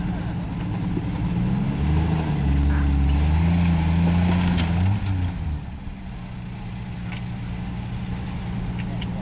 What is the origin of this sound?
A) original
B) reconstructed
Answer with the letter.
A